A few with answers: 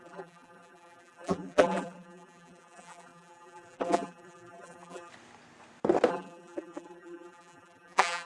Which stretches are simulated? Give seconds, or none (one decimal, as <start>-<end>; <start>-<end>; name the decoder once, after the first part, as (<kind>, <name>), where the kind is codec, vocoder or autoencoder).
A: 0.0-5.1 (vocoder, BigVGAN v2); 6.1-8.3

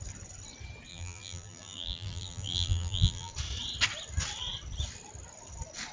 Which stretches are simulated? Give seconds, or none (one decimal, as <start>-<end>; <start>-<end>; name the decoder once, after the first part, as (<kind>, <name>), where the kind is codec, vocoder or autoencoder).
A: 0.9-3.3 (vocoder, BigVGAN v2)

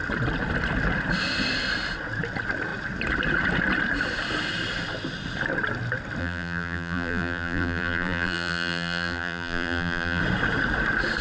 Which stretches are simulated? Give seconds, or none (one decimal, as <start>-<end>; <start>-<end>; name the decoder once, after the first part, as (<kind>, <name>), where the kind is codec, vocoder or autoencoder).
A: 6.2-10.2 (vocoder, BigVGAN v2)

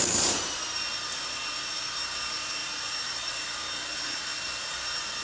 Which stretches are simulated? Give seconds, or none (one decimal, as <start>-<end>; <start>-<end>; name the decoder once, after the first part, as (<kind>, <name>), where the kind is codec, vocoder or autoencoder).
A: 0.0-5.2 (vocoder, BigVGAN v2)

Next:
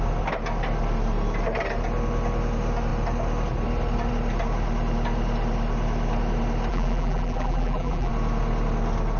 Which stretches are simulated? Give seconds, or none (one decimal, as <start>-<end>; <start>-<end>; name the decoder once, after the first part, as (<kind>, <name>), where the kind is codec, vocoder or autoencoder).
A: 6.7-8.1 (vocoder, BigVGAN v2)